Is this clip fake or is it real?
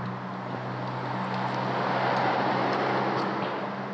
real